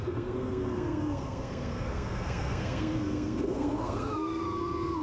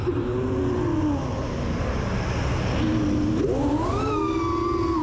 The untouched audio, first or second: second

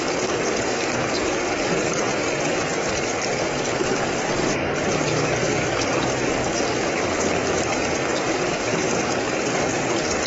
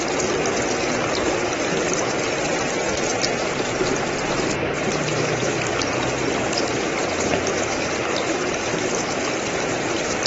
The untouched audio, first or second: second